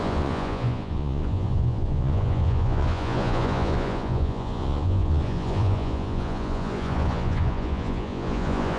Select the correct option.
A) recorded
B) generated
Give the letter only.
B